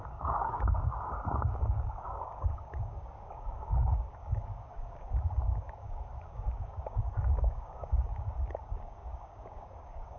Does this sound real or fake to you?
fake